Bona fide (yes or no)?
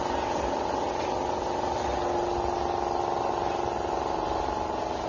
yes